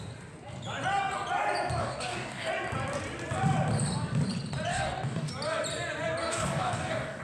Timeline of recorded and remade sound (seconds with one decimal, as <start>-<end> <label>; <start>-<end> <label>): 0.0-1.8 recorded; 1.8-2.5 remade; 2.5-4.7 recorded; 4.7-5.3 remade; 5.3-6.2 recorded; 6.2-7.2 remade